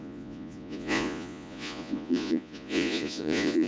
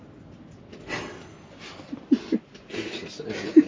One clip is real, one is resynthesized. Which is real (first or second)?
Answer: second